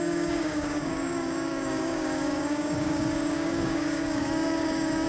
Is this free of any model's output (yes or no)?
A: no